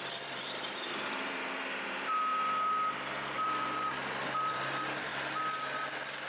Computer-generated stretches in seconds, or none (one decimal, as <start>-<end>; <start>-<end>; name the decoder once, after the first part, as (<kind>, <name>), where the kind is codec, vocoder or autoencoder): 0.0-5.1 (vocoder, BigVGAN v2); 5.8-6.3